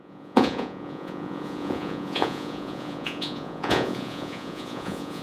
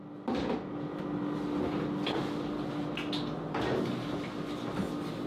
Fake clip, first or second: first